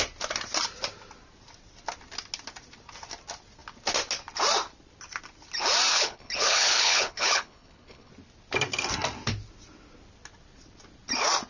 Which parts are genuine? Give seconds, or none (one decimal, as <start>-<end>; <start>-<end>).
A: 0.0-5.9; 8.1-11.5

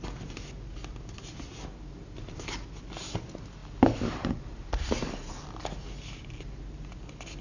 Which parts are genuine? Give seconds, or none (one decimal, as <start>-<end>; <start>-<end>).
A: 0.0-7.4

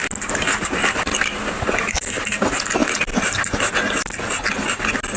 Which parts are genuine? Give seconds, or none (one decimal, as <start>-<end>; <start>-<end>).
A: 0.0-2.8; 3.7-5.2